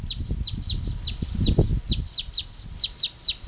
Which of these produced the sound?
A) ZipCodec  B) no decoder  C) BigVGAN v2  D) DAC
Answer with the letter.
B